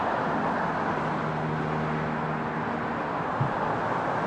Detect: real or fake real